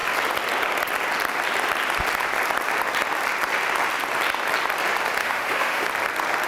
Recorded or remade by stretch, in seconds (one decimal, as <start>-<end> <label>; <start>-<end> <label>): 0.0-5.2 recorded; 5.2-5.9 remade; 5.9-6.5 recorded